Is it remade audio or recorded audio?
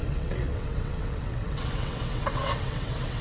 remade